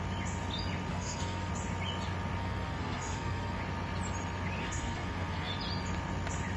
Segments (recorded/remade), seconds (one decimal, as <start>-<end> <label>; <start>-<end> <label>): 0.0-0.9 recorded; 0.9-1.5 remade; 1.5-2.4 recorded; 2.4-3.6 remade; 3.6-4.6 recorded; 4.6-5.5 remade; 5.5-6.6 recorded

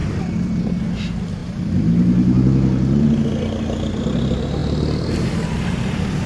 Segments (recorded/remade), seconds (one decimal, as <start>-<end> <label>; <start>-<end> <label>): 0.0-6.3 recorded

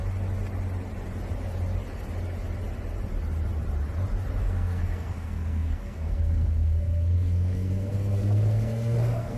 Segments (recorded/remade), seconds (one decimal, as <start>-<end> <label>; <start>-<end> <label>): 0.0-4.4 recorded; 4.4-9.4 remade

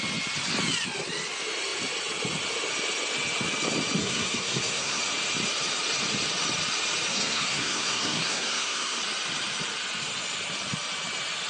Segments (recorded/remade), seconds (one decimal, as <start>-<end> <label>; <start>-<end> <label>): 0.0-4.0 recorded; 4.0-5.0 remade; 5.0-7.1 recorded; 7.1-9.0 remade; 9.0-11.5 recorded

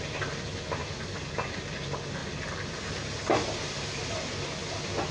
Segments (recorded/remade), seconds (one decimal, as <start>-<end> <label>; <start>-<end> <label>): 0.0-5.1 recorded

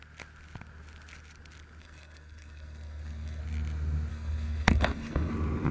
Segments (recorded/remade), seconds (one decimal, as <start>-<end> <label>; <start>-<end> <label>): 0.0-1.8 recorded; 1.8-3.4 remade; 3.4-4.1 recorded; 4.1-5.3 remade; 5.3-5.7 recorded

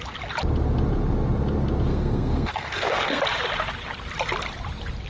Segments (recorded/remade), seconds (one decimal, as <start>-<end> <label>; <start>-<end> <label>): 0.0-1.9 recorded; 1.9-3.2 remade; 3.2-5.1 recorded